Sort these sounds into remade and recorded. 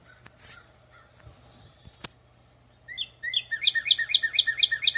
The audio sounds recorded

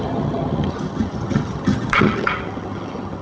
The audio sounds remade